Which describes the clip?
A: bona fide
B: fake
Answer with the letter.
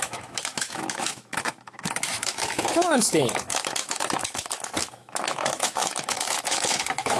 B